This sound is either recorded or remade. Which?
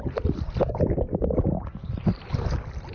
recorded